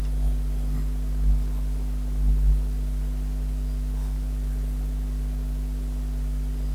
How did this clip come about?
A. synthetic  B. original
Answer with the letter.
B